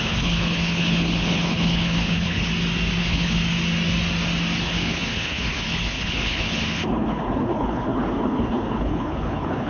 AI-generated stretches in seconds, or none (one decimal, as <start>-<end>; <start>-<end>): 0.0-2.5; 3.0-3.4; 4.6-9.7